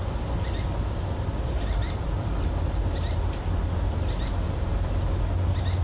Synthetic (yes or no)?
no